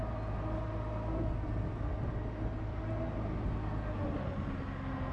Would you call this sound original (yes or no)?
yes